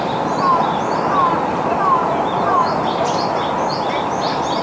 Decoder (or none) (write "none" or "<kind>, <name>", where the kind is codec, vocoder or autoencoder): none